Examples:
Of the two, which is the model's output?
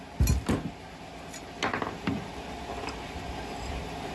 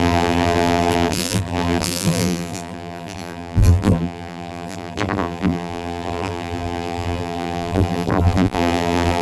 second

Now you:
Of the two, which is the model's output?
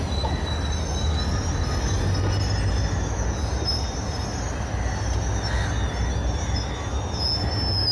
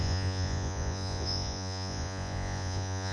second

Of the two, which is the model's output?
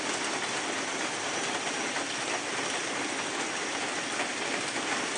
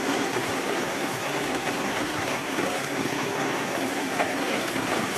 second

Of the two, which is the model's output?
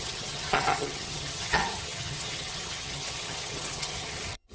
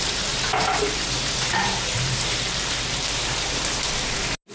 first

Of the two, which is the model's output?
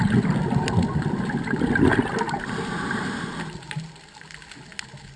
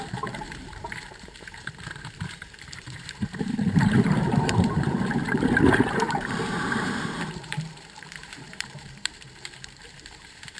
second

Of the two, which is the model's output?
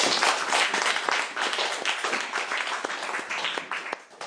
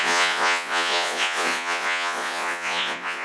second